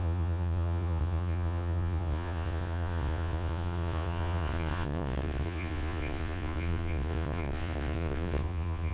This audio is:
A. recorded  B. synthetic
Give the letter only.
B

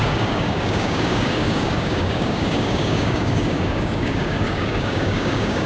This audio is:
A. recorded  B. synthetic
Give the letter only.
B